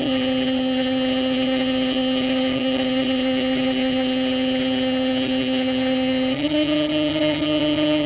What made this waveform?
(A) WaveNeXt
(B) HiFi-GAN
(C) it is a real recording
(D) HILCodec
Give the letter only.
B